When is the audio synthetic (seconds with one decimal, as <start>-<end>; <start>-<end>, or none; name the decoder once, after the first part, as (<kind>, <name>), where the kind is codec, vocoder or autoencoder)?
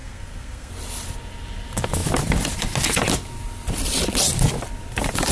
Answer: 0.0-0.7 (codec, SNAC)